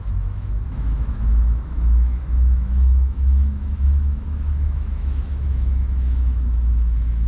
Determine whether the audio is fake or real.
fake